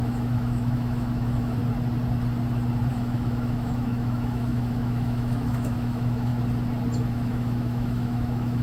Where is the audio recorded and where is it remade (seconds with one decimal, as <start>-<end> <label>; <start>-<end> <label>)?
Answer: 0.0-1.6 remade; 1.6-2.9 recorded; 2.9-6.3 remade; 6.3-7.1 recorded; 7.1-8.6 remade